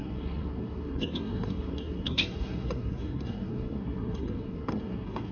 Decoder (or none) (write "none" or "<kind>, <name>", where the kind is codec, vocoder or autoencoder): codec, SNAC